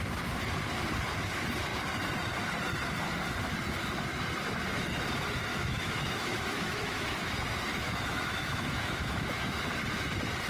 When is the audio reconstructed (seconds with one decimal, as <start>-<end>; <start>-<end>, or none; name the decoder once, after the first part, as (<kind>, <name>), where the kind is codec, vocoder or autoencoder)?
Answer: 5.5-7.3 (autoencoder, DAC-VAE); 7.7-9.6